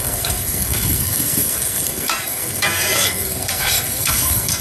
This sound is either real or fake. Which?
fake